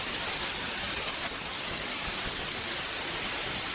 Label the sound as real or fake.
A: real